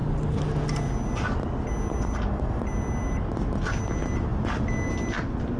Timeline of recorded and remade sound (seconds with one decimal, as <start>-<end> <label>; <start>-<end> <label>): 0.0-5.6 recorded